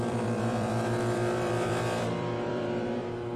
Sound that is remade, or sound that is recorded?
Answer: remade